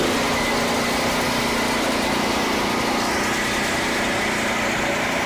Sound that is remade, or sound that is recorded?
recorded